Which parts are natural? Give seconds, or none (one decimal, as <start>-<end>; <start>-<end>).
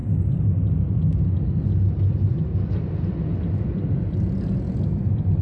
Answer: 0.0-1.9; 2.5-3.1